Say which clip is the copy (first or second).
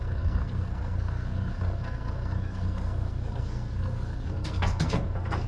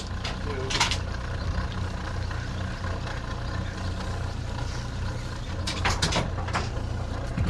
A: first